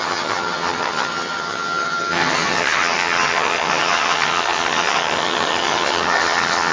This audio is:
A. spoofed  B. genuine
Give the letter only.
A